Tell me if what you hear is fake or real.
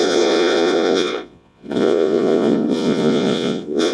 fake